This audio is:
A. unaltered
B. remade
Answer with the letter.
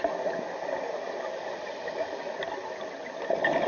A